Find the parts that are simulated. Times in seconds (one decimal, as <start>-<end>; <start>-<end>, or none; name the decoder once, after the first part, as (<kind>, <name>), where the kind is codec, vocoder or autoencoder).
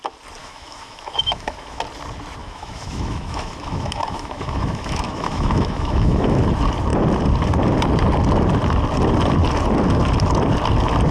0.4-1.8 (autoencoder, DAC-VAE); 2.4-6.4